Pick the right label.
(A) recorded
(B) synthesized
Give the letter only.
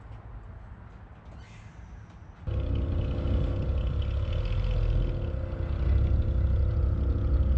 A